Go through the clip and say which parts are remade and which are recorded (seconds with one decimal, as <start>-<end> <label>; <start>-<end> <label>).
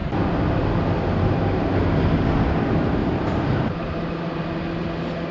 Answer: 0.0-3.0 recorded; 3.0-4.6 remade; 4.6-5.3 recorded